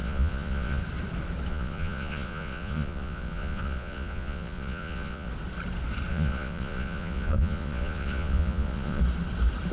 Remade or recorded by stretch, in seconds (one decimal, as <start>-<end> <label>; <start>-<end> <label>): 0.0-0.8 remade; 0.8-1.5 recorded; 1.5-5.3 remade; 5.3-6.1 recorded; 6.1-9.0 remade; 9.0-9.7 recorded